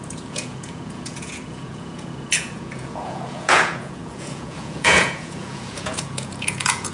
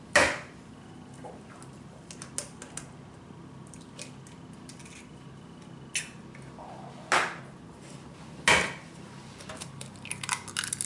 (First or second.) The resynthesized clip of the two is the first